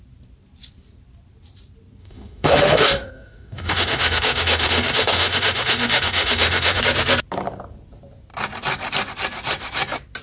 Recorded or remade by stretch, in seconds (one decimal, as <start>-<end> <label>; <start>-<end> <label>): 0.0-2.0 recorded; 2.0-6.8 remade; 6.8-10.2 recorded